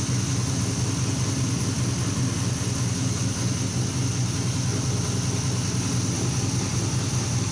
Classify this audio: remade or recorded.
recorded